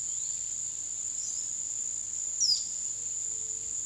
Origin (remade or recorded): recorded